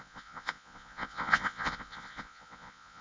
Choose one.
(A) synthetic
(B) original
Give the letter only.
A